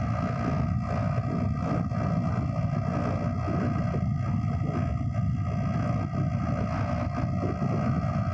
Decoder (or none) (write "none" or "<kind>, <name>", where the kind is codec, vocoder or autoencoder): none